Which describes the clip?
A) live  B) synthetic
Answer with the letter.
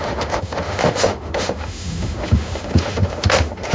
B